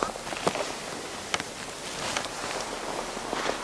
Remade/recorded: recorded